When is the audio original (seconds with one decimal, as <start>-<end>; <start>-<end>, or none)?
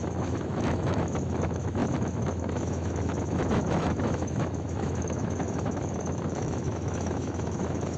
none